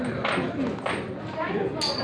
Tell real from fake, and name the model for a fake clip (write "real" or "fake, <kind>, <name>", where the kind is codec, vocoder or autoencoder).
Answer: real